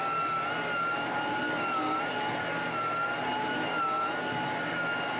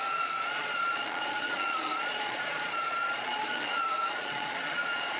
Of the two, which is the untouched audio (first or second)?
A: first